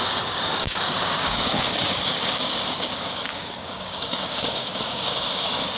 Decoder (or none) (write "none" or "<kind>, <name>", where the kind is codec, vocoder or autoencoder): codec, DAC